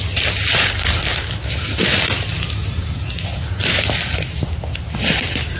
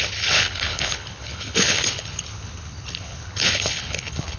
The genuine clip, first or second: first